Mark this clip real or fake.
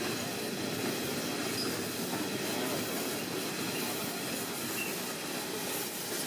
real